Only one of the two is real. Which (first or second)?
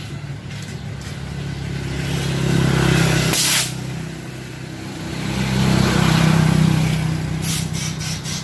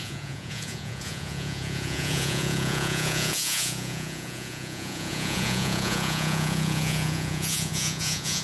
first